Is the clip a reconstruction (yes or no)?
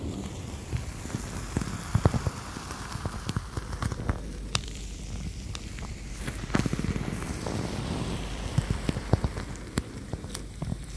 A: yes